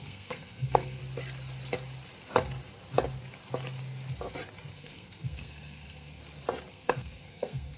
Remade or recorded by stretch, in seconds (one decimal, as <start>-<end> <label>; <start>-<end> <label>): 0.0-1.0 remade; 1.0-4.7 recorded; 4.7-6.2 remade; 6.2-6.7 recorded; 6.7-7.8 remade